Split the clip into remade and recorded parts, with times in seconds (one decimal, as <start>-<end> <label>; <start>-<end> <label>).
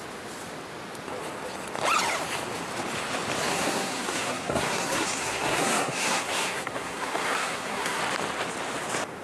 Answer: 0.0-3.5 recorded; 3.5-8.0 remade; 8.0-9.2 recorded